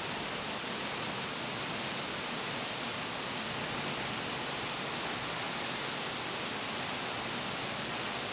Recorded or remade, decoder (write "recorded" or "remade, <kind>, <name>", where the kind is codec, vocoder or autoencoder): recorded